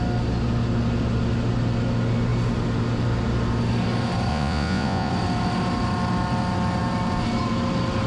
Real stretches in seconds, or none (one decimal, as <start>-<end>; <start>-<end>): 0.0-4.3; 5.1-8.1